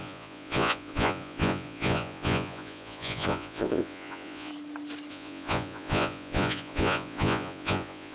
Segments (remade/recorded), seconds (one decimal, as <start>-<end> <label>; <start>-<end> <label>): 0.0-4.5 remade; 4.5-5.1 recorded; 5.1-8.1 remade